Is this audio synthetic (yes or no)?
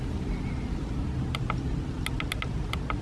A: no